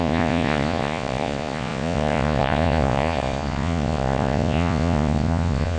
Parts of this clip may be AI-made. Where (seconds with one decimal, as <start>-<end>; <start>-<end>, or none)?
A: 0.0-5.8